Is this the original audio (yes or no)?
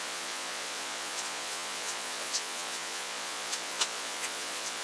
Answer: no